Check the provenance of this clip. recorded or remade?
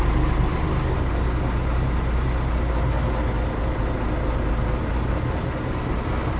recorded